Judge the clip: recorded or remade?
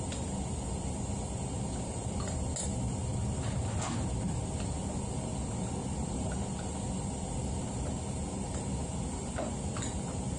recorded